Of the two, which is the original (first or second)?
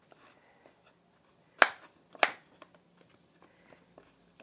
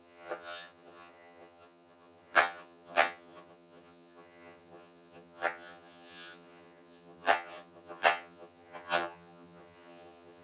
first